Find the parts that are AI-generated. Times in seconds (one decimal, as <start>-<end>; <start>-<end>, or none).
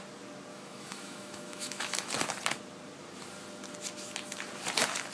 0.5-2.1